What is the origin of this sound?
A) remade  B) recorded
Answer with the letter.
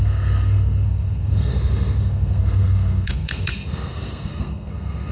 A